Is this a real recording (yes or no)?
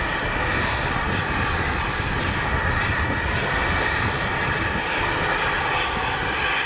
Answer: yes